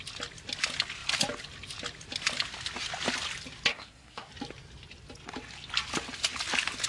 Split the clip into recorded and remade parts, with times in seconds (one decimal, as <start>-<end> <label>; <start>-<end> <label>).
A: 0.0-3.7 recorded; 3.7-4.3 remade; 4.3-6.9 recorded